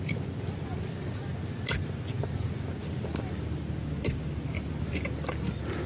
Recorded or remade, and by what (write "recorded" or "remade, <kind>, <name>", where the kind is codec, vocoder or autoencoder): recorded